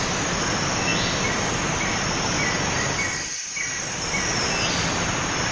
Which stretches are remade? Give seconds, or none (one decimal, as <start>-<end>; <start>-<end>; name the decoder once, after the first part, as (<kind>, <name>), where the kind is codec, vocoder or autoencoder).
none